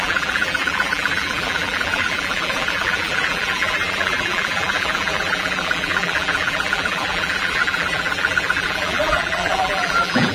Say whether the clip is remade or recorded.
remade